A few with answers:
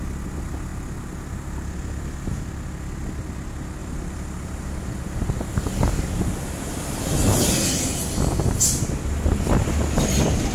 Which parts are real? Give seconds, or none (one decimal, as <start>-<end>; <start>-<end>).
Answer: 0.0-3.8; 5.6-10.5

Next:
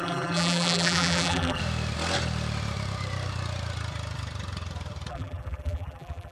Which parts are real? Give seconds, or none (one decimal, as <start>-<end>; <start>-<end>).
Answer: 1.6-5.1

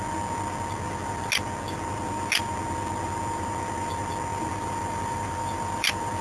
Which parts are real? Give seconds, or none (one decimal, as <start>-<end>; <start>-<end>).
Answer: 0.0-4.3